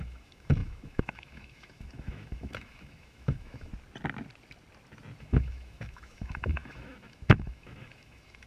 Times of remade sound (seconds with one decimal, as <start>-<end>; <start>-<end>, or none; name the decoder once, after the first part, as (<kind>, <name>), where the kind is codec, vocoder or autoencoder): 0.0-3.7 (autoencoder, DAC-VAE); 5.2-8.5